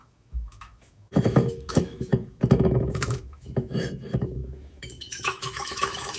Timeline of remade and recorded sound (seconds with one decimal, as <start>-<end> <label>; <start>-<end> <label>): 0.0-6.2 remade